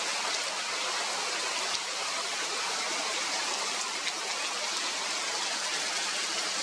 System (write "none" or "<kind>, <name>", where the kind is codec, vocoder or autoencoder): none